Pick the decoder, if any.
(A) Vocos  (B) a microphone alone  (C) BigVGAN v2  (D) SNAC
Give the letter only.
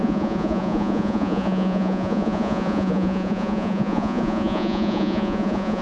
A